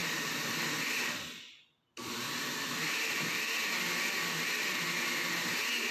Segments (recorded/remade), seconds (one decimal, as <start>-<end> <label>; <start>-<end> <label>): 0.0-1.0 remade; 1.0-5.9 recorded